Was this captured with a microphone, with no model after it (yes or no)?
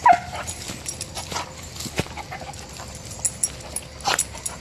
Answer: yes